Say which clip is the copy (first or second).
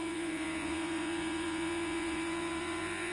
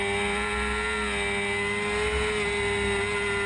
first